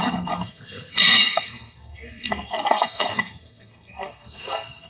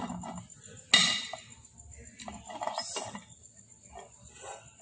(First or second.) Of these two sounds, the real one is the second